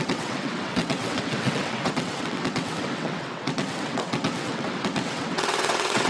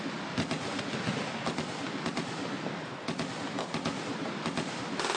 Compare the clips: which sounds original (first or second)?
second